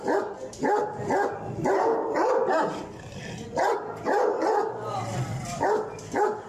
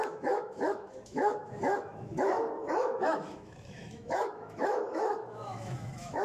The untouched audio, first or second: first